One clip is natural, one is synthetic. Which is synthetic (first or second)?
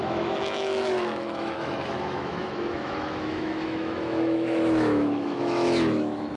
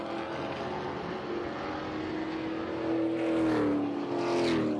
first